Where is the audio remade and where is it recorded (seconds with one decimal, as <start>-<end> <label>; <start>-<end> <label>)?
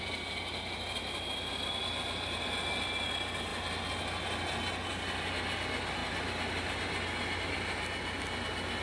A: 0.0-8.8 recorded